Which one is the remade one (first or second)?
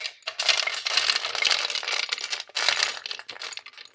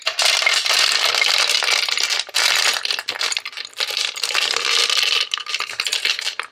second